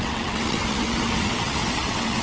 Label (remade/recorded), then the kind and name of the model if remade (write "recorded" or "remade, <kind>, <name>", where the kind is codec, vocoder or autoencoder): remade, vocoder, WaveNeXt